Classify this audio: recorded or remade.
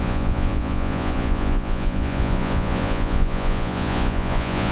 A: remade